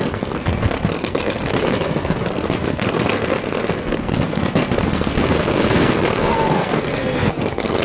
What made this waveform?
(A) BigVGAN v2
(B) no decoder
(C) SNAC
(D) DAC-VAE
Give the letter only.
C